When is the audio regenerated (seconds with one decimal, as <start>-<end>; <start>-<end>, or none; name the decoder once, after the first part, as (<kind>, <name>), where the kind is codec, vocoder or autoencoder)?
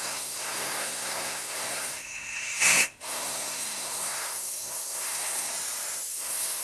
0.0-5.5 (codec, SNAC); 6.1-6.6